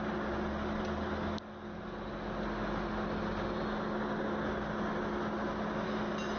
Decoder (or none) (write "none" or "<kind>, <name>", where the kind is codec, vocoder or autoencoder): none